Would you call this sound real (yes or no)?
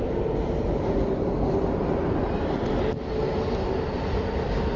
yes